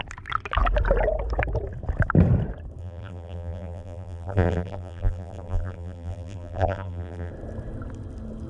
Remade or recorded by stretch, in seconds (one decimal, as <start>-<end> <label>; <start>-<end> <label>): 0.0-2.8 recorded; 2.8-7.3 remade; 7.3-8.5 recorded